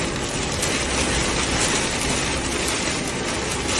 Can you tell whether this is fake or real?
real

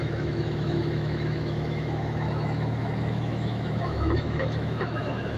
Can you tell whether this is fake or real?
fake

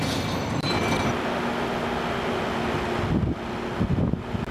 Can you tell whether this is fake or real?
real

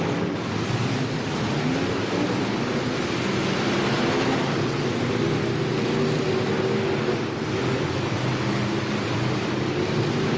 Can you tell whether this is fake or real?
real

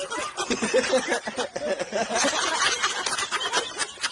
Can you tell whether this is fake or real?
real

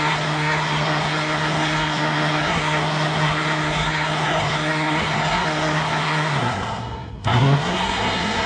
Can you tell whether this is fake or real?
fake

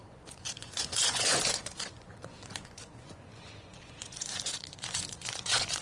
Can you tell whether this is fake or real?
fake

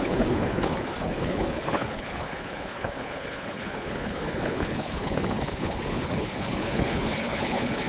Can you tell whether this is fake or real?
fake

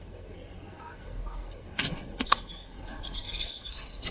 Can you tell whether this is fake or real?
fake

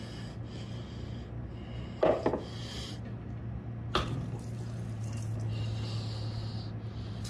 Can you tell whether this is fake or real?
real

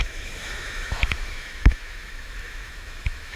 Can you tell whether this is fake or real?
fake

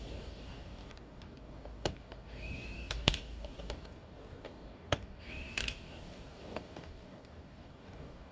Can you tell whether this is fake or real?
fake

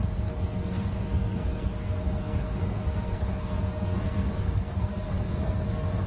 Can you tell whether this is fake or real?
fake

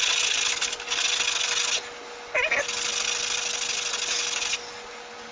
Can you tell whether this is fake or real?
real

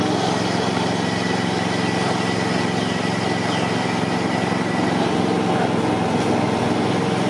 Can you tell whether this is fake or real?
real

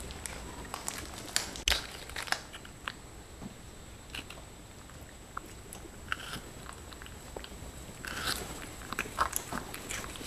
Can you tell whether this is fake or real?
real